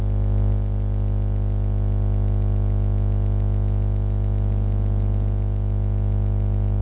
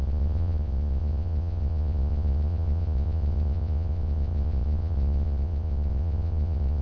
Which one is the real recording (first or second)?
first